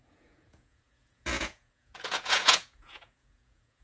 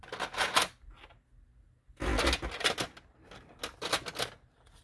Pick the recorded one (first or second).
second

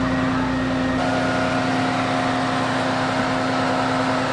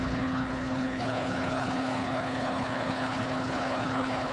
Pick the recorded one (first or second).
first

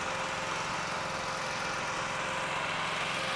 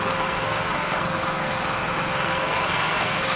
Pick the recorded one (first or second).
first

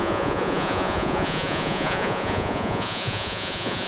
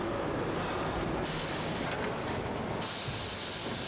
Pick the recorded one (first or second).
second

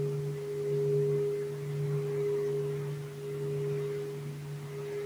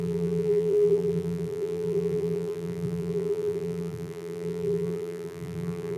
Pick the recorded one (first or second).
first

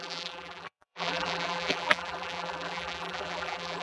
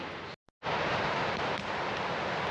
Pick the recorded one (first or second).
second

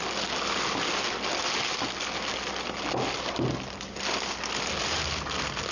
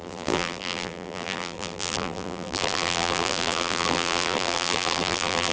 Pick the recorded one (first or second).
first